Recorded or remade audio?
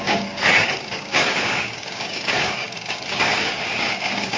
remade